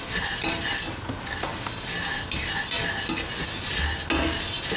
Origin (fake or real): real